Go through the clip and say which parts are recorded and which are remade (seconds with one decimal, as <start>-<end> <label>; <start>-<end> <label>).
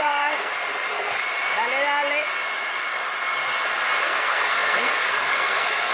0.0-0.5 remade; 0.5-4.0 recorded; 4.0-5.9 remade